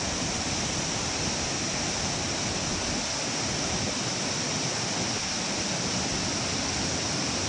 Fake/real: real